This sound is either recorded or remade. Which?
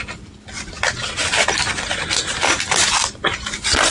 recorded